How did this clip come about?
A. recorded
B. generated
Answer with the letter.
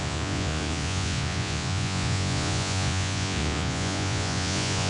B